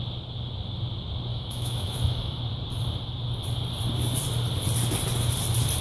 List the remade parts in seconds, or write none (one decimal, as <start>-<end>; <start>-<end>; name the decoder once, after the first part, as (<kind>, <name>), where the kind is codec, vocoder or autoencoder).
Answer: 1.3-2.4 (autoencoder, DAC-VAE)